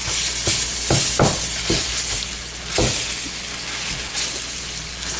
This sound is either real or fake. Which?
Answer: real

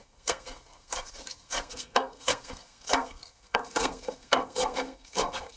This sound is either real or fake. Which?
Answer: fake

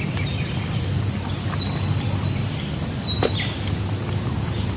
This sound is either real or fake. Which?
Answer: real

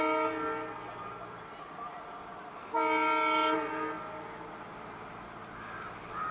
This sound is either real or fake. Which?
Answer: real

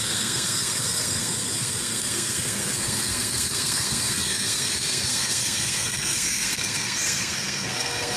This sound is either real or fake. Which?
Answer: fake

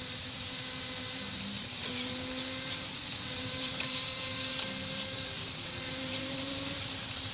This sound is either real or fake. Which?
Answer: fake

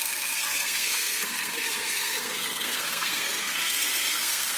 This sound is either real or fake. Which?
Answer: fake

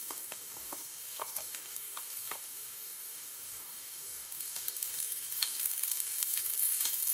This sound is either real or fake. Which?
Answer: fake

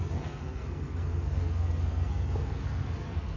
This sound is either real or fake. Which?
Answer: fake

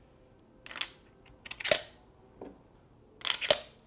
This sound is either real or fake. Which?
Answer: real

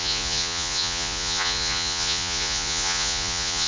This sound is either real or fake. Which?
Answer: fake